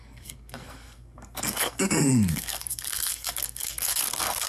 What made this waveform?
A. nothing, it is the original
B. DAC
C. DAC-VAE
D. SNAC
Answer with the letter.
D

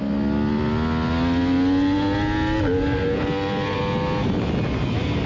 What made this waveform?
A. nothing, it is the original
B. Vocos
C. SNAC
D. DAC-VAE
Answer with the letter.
A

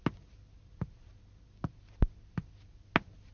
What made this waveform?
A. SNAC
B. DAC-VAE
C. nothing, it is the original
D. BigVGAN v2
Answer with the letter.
C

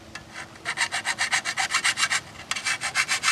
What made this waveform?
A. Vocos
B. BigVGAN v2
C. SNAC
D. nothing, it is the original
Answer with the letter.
D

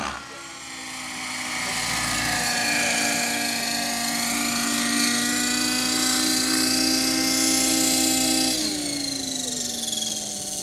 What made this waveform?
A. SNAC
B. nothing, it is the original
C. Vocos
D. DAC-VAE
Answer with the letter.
B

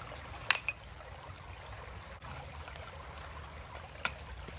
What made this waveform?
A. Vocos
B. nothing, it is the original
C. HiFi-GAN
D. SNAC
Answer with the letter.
B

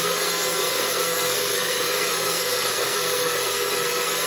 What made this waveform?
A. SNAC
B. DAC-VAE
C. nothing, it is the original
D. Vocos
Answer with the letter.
A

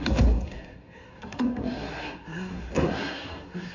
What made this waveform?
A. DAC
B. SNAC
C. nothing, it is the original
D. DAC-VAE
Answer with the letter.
B